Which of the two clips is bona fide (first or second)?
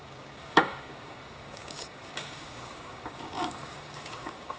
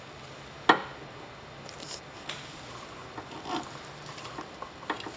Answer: second